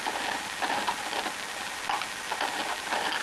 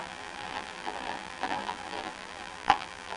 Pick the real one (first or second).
first